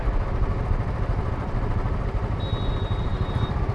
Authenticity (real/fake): real